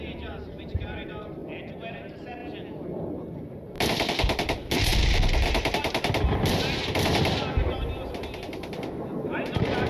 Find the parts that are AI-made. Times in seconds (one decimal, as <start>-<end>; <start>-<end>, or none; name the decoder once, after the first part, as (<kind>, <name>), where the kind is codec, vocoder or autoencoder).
0.0-1.4 (vocoder, BigVGAN v2); 1.9-2.4; 3.8-4.9; 9.2-9.9